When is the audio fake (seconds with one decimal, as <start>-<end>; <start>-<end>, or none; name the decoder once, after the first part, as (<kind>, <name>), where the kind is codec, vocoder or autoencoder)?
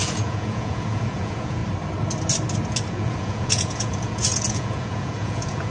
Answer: 0.0-1.6 (vocoder, Vocos); 2.9-5.7